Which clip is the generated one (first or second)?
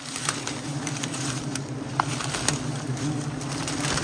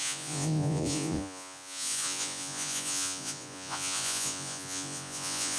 second